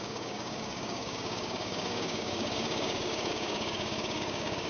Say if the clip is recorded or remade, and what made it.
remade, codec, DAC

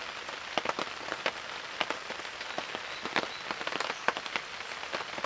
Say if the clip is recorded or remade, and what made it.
recorded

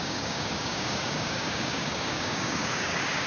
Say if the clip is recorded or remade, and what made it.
remade, codec, DAC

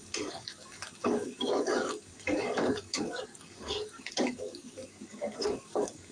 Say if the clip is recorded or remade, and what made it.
remade, codec, DAC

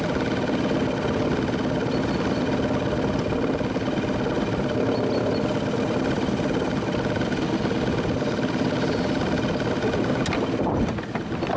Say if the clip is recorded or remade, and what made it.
recorded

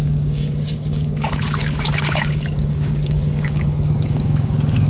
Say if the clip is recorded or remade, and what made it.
remade, codec, DAC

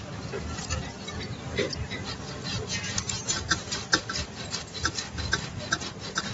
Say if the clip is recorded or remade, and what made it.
recorded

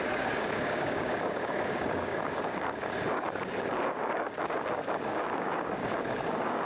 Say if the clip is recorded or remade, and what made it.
remade, codec, DAC